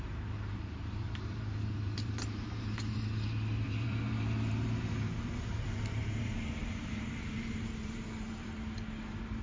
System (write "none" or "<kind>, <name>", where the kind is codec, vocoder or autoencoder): vocoder, BigVGAN v2